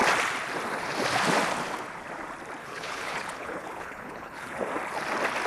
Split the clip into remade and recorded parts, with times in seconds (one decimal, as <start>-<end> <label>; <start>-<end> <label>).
0.0-2.6 recorded; 2.6-4.6 remade; 4.6-5.5 recorded